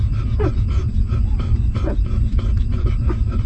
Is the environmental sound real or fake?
real